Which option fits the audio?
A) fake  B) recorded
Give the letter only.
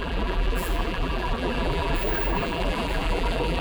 A